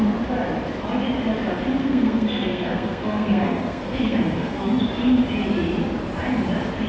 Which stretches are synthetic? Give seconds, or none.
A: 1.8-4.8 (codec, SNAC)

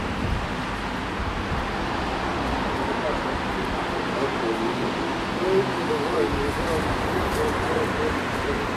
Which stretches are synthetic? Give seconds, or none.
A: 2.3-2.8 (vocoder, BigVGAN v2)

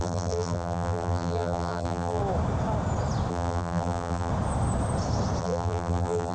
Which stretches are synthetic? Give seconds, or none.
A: 0.0-2.2 (vocoder, BigVGAN v2); 3.3-4.3; 5.4-6.3